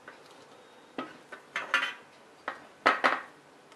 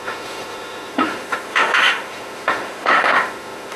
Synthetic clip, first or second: second